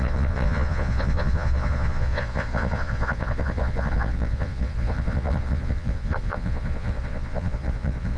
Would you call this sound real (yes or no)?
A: no